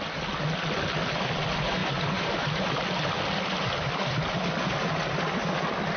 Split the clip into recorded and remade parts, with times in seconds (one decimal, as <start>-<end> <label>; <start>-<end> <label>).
0.0-1.8 recorded; 1.8-2.7 remade; 2.7-6.0 recorded